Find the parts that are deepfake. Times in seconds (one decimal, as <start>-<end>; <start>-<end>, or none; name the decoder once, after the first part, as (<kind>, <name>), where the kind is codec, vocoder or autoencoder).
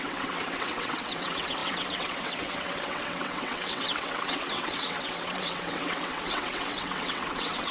0.0-7.7 (vocoder, WaveNeXt)